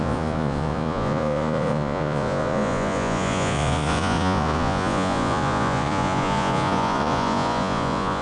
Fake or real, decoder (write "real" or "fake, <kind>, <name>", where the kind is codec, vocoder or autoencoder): fake, vocoder, Vocos